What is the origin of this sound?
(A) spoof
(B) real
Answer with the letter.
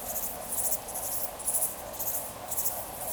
B